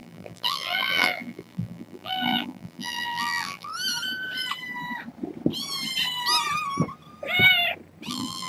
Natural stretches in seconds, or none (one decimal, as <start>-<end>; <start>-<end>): 3.7-8.1